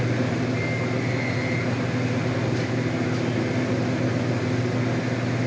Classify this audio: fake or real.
real